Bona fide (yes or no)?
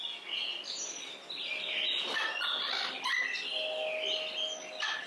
yes